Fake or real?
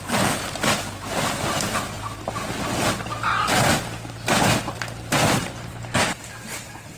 fake